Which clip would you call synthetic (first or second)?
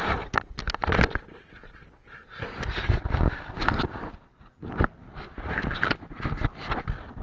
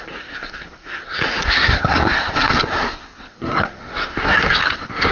second